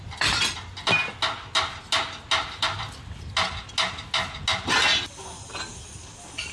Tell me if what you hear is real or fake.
real